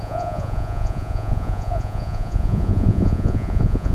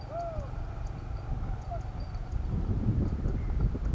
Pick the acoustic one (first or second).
second